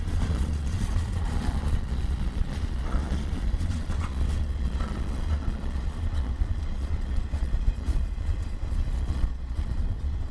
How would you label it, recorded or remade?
remade